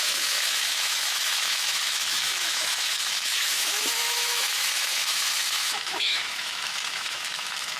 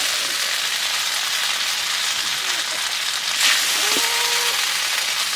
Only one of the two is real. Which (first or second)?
second